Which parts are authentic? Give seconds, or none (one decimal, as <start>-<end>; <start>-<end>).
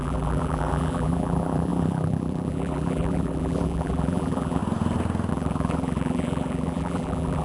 4.6-5.3